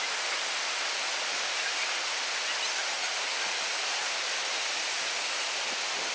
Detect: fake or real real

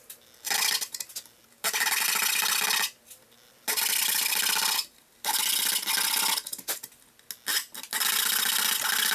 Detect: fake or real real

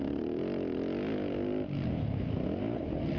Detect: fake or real real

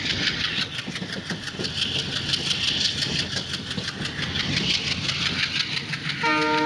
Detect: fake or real real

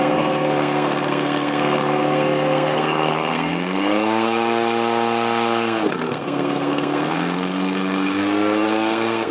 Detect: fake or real fake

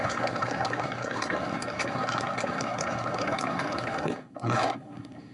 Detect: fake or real fake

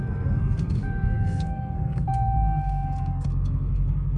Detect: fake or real fake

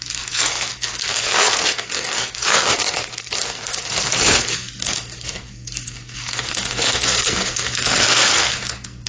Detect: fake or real fake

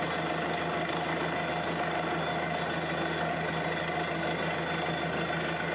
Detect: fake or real real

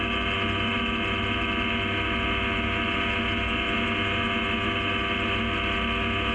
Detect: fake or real real